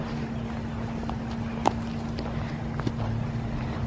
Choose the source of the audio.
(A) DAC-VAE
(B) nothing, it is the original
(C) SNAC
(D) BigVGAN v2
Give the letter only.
D